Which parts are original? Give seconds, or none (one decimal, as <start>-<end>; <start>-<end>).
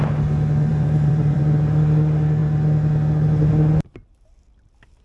0.0-0.7; 1.4-5.0